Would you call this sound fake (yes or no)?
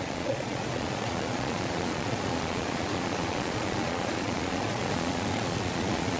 yes